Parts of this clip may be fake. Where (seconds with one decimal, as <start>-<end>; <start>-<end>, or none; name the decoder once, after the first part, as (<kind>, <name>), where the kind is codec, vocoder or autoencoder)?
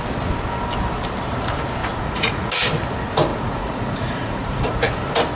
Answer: 1.8-2.5 (vocoder, Vocos); 3.3-4.9